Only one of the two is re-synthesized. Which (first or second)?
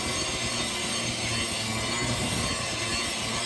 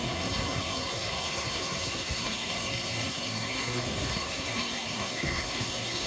second